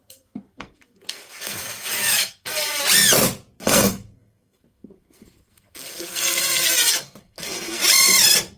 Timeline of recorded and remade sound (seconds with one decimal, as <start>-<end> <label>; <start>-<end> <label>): 0.0-2.8 remade; 2.8-3.6 recorded; 3.6-7.8 remade; 7.8-8.6 recorded